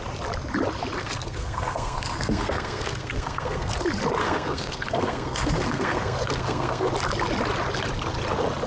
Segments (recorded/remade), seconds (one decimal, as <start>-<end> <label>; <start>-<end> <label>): 0.0-1.0 recorded; 1.0-3.7 remade; 3.7-4.2 recorded; 4.2-6.9 remade; 6.9-8.7 recorded